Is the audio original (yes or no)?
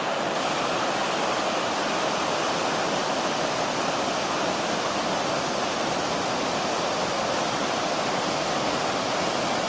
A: yes